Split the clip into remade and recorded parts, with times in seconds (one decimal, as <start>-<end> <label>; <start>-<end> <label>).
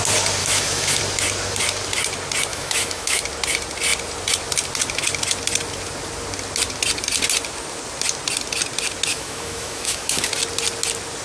0.0-0.4 recorded; 0.4-1.0 remade; 1.0-2.5 recorded; 2.5-3.2 remade; 3.2-9.1 recorded; 9.1-10.3 remade; 10.3-11.2 recorded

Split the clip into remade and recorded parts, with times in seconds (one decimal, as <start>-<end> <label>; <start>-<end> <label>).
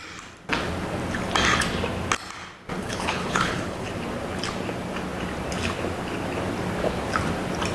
0.0-2.8 recorded; 2.8-3.9 remade; 3.9-7.7 recorded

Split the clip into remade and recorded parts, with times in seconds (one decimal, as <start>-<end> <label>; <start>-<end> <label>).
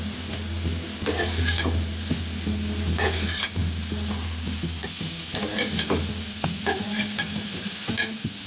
0.0-8.5 recorded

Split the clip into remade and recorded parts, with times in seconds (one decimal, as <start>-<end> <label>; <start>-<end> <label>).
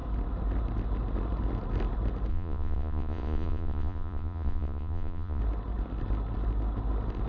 0.0-2.3 recorded; 2.3-5.4 remade; 5.4-7.3 recorded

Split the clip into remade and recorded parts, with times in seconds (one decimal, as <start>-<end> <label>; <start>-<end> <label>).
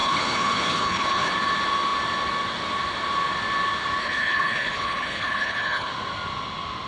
0.0-1.3 remade; 1.3-4.0 recorded; 4.0-5.9 remade; 5.9-6.9 recorded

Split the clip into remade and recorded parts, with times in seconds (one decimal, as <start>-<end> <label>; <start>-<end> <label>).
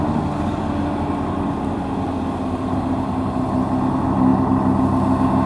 0.0-5.5 recorded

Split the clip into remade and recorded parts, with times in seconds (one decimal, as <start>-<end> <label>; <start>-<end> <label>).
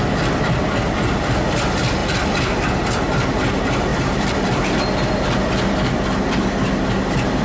0.0-2.0 recorded; 2.0-2.7 remade; 2.7-3.9 recorded; 3.9-4.8 remade; 4.8-7.4 recorded